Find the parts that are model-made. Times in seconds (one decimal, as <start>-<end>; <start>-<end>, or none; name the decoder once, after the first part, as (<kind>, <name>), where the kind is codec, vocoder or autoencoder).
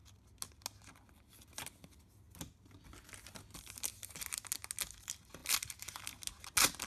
none